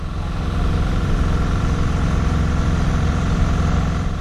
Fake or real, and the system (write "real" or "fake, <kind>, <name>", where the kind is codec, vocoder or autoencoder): fake, vocoder, BigVGAN v2